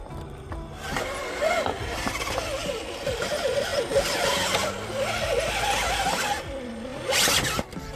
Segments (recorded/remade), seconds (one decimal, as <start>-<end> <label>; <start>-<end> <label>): 0.0-2.6 recorded; 2.6-3.3 remade; 3.3-6.9 recorded; 6.9-8.0 remade